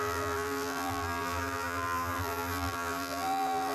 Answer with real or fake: fake